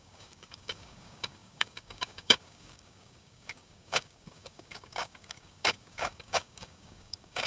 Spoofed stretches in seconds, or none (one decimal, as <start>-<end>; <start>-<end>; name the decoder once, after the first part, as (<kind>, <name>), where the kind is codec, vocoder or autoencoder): 0.0-7.5 (codec, DAC)